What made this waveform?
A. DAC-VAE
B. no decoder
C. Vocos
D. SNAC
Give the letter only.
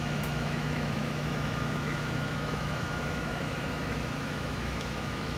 A